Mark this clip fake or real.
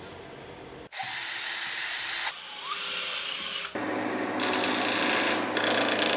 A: real